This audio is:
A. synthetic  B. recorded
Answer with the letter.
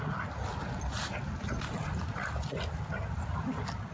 B